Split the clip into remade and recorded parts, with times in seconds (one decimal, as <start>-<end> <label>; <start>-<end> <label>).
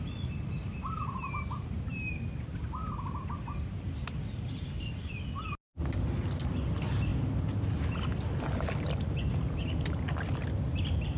0.0-11.2 recorded